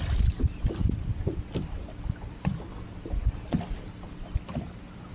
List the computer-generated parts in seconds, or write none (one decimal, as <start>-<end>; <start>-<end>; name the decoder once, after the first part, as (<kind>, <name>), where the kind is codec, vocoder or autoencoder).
none